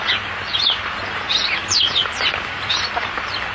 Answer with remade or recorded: recorded